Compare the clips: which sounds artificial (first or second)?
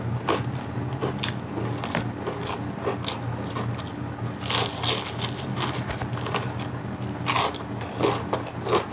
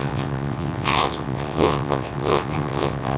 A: second